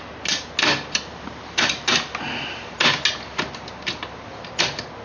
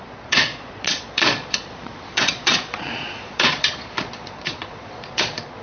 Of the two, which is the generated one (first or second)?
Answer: second